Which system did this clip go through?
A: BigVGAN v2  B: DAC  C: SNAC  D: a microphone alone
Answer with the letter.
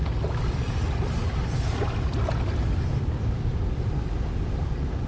D